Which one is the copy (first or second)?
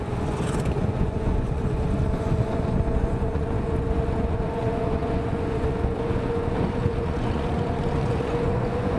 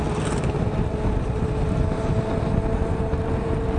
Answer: first